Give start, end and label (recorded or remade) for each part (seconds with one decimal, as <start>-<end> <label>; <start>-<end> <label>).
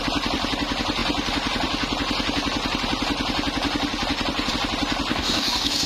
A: 0.0-5.1 recorded; 5.1-5.9 remade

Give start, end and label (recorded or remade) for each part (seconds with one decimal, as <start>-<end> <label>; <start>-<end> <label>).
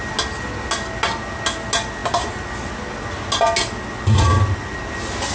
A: 0.0-5.3 recorded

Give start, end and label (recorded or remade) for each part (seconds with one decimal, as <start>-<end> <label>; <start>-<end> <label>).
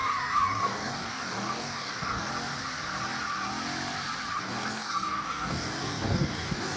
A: 0.0-2.3 remade; 2.3-4.4 recorded; 4.4-6.8 remade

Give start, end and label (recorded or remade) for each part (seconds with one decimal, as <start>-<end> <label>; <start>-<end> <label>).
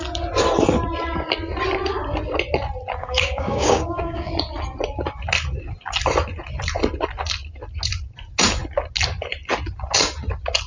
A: 0.0-3.0 recorded; 3.0-4.3 remade; 4.3-10.7 recorded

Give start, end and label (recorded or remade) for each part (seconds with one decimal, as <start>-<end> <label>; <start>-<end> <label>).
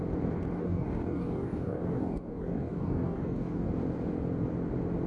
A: 0.0-0.6 recorded; 0.6-3.7 remade; 3.7-5.1 recorded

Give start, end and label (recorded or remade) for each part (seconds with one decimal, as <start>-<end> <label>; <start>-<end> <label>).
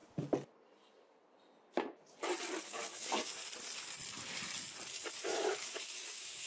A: 0.0-2.7 recorded; 2.7-3.4 remade; 3.4-5.1 recorded; 5.1-6.5 remade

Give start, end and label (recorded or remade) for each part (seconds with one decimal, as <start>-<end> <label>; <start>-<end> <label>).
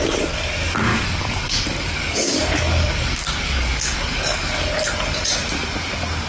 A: 0.0-0.9 recorded; 0.9-4.7 remade; 4.7-6.3 recorded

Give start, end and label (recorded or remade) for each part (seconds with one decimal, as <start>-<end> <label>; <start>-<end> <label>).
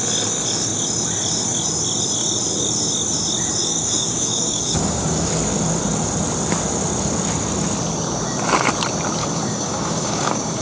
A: 0.0-3.6 recorded; 3.6-5.3 remade; 5.3-9.2 recorded; 9.2-10.6 remade